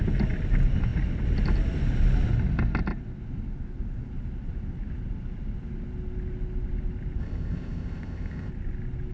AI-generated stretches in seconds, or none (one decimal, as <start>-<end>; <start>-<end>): 7.2-8.5